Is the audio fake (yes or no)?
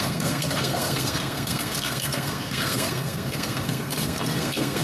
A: yes